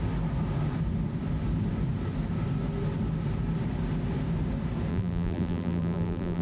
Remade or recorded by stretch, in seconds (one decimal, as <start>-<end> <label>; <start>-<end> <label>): 0.0-4.9 recorded; 4.9-6.4 remade